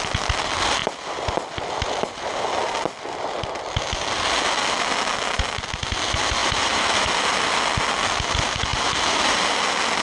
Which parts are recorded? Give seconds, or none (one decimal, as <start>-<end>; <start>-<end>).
0.0-10.0